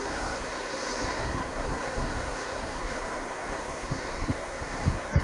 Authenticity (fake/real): fake